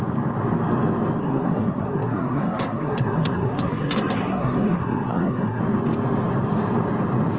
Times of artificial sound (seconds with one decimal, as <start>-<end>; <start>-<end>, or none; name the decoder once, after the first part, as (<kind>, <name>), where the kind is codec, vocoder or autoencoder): 1.2-5.6 (codec, SNAC)

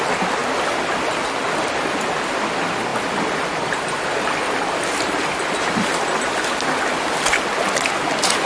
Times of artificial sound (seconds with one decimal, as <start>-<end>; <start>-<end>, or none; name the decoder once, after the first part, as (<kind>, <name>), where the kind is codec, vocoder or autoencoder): none